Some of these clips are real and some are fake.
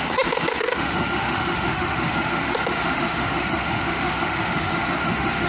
fake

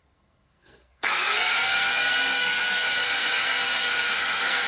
fake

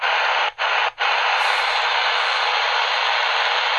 real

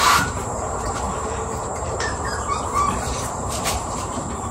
fake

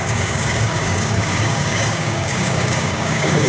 fake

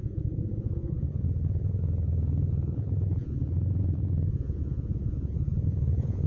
fake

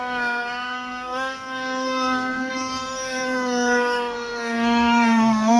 fake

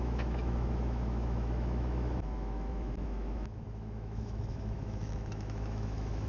fake